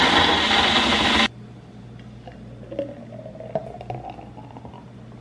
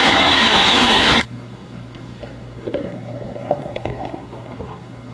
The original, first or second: first